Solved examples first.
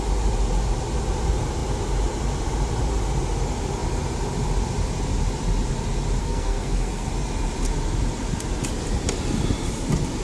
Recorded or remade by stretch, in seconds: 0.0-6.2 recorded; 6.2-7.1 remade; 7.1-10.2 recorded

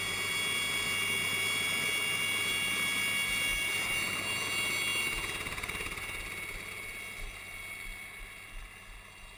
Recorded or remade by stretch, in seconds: 0.0-9.4 recorded

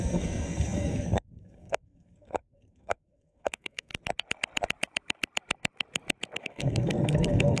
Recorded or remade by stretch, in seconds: 0.0-3.9 remade; 3.9-6.4 recorded; 6.4-7.6 remade

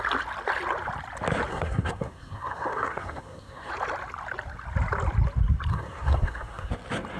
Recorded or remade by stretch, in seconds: 0.0-1.5 recorded; 1.5-3.7 remade; 3.7-5.7 recorded; 5.7-6.7 remade; 6.7-7.2 recorded

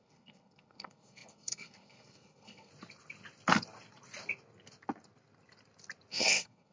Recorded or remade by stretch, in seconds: 0.0-2.7 remade; 2.7-6.1 recorded; 6.1-6.7 remade